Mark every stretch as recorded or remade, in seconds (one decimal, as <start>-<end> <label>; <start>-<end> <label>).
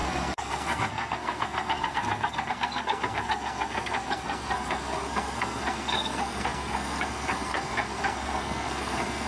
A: 0.0-9.3 remade